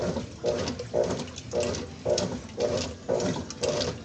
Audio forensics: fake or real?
real